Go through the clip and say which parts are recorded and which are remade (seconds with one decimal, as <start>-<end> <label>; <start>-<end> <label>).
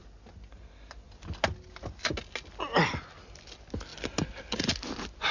0.0-5.3 recorded